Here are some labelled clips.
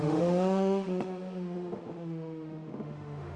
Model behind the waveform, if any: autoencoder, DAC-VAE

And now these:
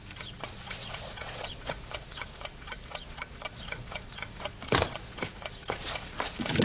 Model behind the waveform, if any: vocoder, Vocos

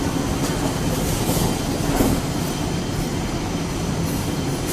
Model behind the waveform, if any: none